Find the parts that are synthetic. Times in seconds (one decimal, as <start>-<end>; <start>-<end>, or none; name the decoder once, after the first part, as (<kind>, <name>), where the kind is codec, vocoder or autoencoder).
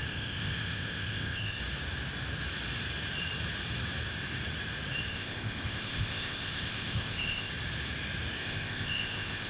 0.0-1.6 (codec, ZipCodec); 5.1-7.5; 8.4-9.5